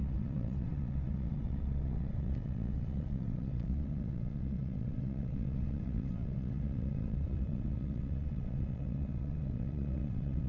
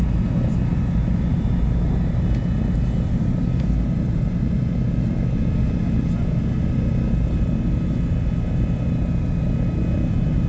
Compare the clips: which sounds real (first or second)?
second